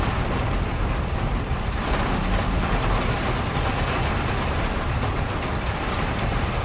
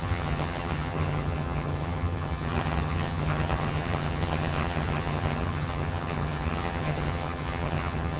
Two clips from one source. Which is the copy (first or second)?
second